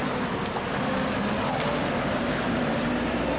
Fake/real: real